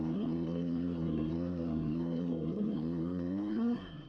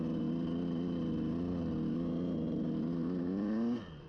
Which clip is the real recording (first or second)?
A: second